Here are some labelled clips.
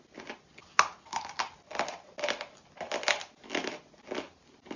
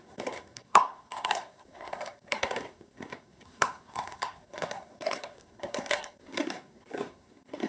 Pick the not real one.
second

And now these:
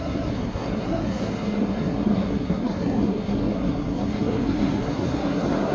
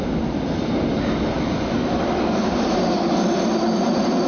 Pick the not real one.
first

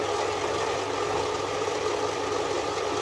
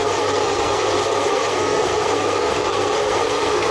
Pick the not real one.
second